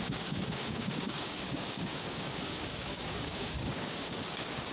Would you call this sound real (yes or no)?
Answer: no